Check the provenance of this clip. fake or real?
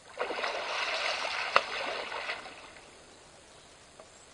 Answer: real